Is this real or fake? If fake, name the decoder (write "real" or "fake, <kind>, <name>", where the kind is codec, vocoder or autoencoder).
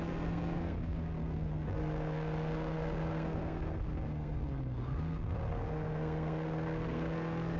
fake, codec, SNAC